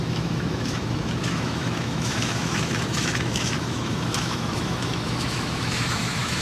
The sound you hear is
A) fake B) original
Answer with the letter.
A